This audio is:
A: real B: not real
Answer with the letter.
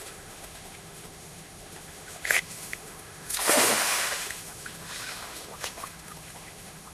B